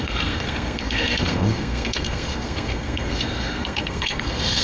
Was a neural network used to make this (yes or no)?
yes